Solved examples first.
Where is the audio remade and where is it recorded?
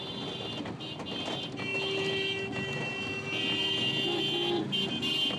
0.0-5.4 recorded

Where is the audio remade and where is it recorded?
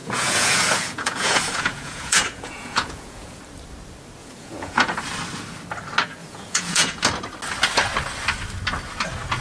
0.0-3.4 remade; 3.4-4.2 recorded; 4.2-5.0 remade; 5.0-6.2 recorded; 6.2-7.0 remade; 7.0-9.4 recorded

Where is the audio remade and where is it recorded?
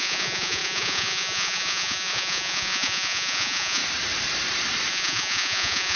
0.0-3.8 remade; 3.8-4.9 recorded; 4.9-6.0 remade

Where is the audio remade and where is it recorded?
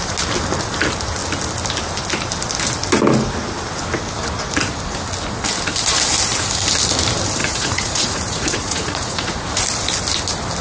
0.0-7.4 recorded; 7.4-9.6 remade; 9.6-10.6 recorded